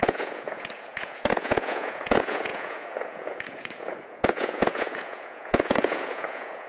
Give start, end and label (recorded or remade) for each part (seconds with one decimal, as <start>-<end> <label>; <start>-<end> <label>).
0.0-6.7 remade